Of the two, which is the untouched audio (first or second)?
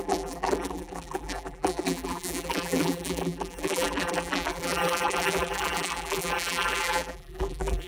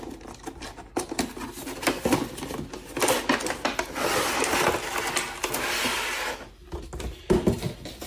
second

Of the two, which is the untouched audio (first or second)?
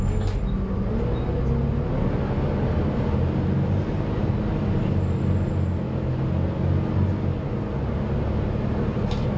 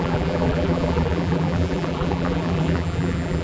first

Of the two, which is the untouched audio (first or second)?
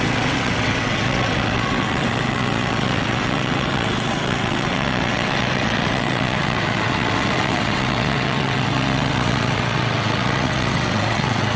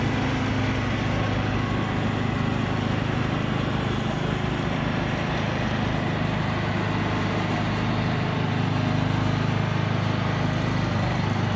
second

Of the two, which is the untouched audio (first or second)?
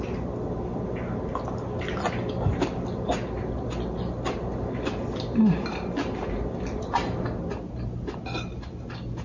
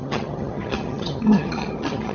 first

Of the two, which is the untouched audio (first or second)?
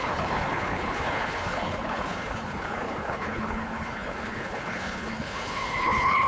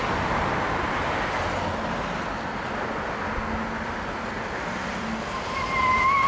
second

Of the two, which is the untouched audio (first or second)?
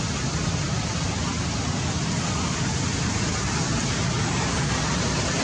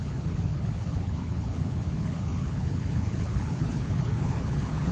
first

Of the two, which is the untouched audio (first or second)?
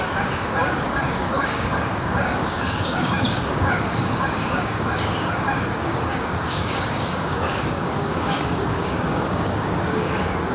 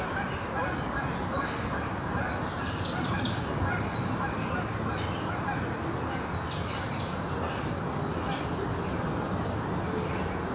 second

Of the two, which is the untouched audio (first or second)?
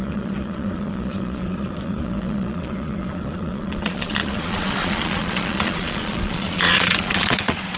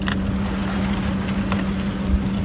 second